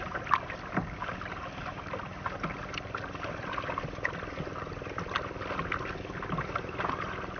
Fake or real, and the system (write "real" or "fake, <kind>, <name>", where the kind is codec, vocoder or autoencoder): real